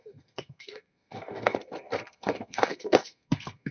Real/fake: fake